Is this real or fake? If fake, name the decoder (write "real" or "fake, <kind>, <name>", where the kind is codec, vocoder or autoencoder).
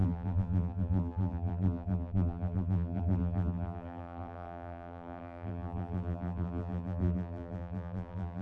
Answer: fake, vocoder, BigVGAN v2